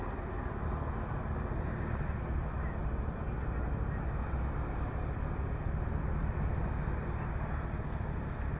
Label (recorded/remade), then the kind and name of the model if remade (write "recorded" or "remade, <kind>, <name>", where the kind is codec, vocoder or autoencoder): recorded